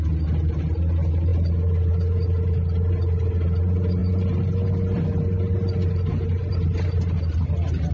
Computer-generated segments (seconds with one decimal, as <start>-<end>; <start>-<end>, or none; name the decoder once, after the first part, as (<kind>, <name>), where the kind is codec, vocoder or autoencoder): none